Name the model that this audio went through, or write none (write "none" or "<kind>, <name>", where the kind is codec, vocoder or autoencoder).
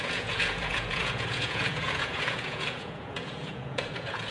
vocoder, Vocos